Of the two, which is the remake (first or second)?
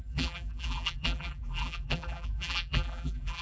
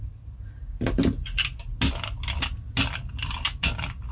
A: first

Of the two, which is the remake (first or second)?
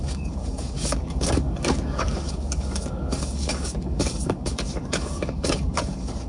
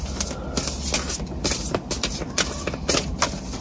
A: first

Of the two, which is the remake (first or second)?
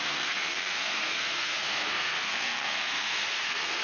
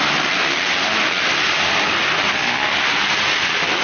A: first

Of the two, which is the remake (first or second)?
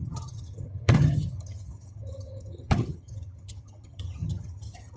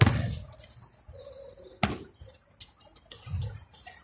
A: first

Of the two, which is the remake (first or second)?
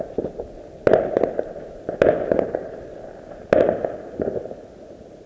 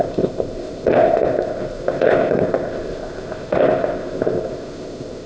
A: second